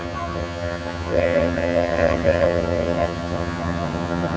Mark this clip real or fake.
fake